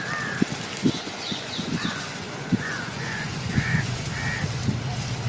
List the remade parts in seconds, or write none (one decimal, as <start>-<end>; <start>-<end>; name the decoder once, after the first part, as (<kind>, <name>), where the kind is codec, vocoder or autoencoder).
0.8-4.0 (vocoder, Vocos)